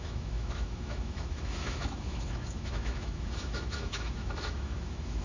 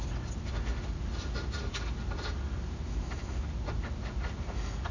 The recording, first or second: second